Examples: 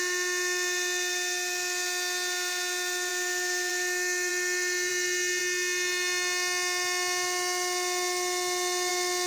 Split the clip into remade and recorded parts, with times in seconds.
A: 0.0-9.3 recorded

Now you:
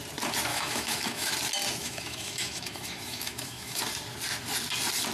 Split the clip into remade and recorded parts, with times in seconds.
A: 0.0-0.5 recorded; 0.5-1.3 remade; 1.3-1.8 recorded; 1.8-3.8 remade; 3.8-5.1 recorded

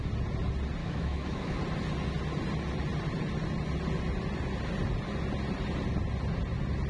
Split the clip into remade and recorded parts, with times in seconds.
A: 0.0-0.8 recorded; 0.8-1.6 remade; 1.6-6.9 recorded